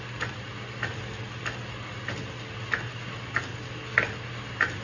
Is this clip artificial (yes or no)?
no